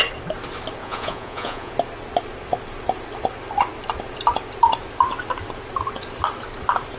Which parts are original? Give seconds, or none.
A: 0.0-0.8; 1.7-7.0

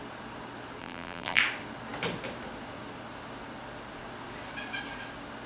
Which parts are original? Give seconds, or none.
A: 0.0-0.8; 1.4-5.5

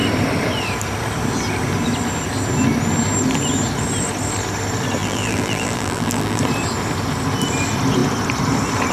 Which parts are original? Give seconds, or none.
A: 0.0-5.0; 6.4-8.9

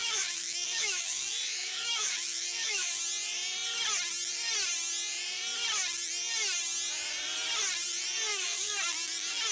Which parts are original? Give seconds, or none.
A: 3.0-8.3; 8.8-9.5

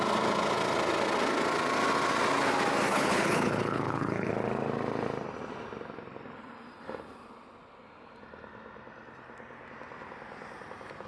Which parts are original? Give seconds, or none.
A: 0.0-2.9; 4.3-11.1

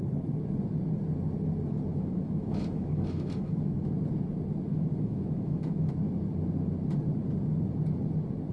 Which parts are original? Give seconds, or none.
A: 0.0-1.9; 3.8-4.7; 5.9-8.5